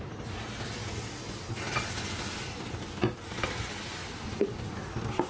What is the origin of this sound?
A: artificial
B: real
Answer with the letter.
B